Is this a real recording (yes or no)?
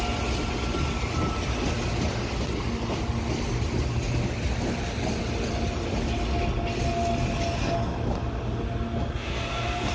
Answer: yes